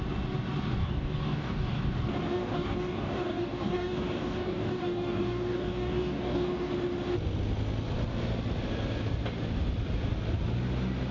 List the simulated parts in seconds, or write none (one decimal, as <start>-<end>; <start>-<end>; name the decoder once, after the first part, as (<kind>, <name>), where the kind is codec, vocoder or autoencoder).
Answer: 0.8-1.8 (codec, DAC); 2.3-6.7